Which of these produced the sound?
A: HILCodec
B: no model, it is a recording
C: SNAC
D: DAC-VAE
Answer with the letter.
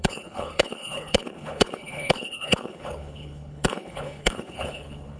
A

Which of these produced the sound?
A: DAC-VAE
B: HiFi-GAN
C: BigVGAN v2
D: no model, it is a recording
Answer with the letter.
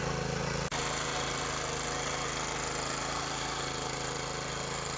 D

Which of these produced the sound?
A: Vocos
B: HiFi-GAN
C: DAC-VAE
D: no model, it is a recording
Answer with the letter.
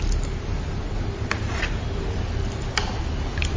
D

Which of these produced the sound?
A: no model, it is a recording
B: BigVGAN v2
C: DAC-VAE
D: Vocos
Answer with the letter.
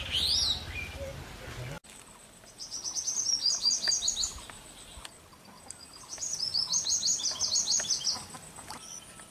A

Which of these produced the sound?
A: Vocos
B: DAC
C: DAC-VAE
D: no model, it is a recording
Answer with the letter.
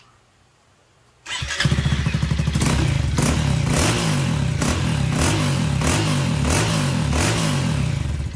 D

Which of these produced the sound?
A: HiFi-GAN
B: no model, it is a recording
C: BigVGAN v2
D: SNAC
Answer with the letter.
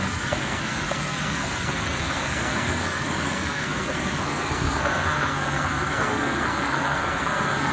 D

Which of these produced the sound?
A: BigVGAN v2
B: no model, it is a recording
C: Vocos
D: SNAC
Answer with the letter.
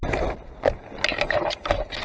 B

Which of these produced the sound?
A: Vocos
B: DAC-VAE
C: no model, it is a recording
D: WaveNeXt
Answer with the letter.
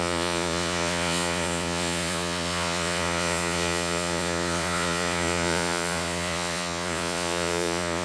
A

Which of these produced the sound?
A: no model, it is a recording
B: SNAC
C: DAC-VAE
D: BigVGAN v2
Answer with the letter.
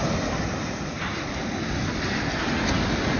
A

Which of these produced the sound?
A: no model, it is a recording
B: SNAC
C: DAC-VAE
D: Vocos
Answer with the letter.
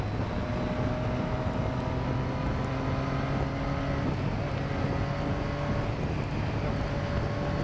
A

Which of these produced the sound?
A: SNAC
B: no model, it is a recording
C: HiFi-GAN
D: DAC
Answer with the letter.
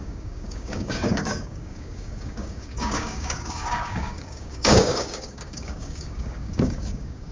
D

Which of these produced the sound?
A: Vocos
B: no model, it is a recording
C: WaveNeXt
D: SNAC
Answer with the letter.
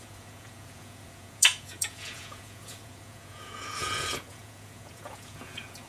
A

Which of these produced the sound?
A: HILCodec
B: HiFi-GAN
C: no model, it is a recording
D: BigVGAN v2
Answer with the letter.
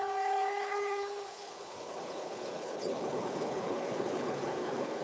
A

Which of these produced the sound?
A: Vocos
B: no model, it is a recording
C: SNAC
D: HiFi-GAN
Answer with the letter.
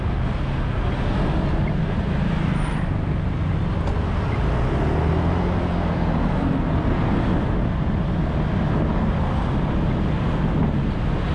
B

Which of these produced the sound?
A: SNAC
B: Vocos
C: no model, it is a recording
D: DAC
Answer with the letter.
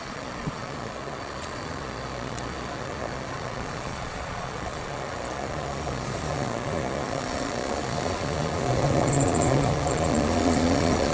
B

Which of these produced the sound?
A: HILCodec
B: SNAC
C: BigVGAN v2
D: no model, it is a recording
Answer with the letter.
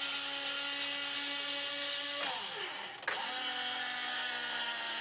D